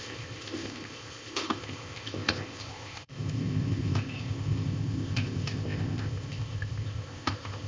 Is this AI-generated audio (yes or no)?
yes